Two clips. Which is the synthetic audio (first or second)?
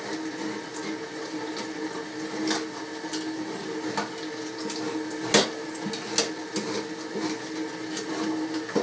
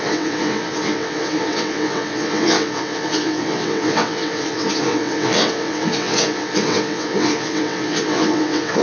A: second